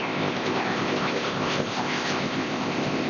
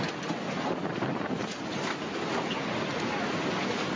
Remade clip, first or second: first